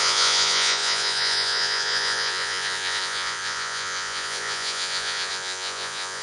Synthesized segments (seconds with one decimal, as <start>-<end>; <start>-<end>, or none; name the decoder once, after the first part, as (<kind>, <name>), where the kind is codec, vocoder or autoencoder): 0.0-6.2 (vocoder, Vocos)